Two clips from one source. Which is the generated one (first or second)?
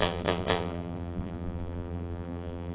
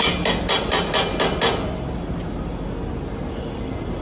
first